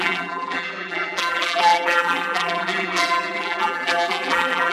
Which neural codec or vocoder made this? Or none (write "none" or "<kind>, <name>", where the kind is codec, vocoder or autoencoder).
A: vocoder, BigVGAN v2